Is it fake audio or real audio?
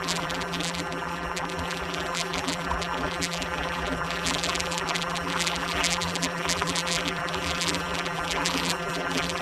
fake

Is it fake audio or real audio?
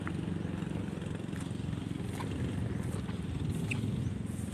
real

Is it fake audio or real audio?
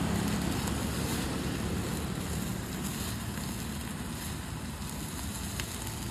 real